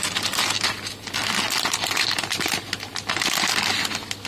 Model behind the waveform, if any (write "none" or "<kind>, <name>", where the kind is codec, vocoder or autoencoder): none